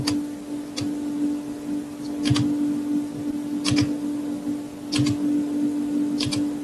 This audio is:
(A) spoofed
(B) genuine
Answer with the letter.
B